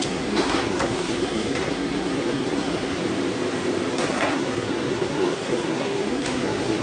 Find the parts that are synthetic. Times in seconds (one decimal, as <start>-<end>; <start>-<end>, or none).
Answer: 0.0-3.0; 3.9-6.8